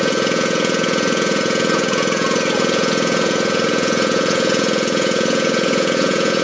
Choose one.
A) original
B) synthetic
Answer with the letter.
B